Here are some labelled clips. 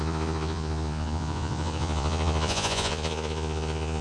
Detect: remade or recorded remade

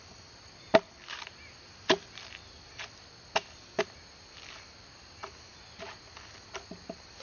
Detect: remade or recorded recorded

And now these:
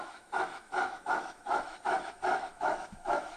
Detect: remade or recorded remade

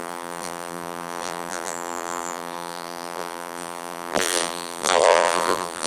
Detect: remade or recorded remade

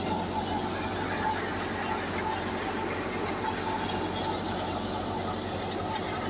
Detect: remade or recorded recorded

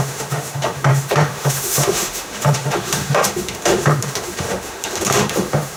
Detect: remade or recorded remade